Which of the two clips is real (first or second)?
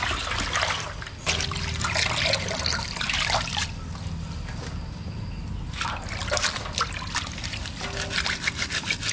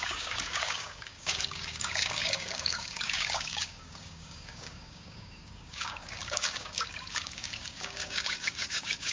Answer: first